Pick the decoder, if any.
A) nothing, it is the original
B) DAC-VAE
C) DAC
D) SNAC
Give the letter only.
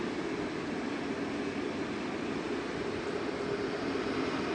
A